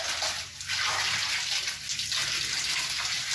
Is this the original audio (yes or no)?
yes